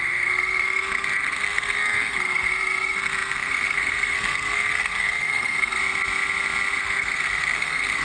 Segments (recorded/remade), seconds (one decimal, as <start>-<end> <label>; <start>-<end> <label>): 0.0-5.8 remade; 5.8-6.8 recorded; 6.8-8.0 remade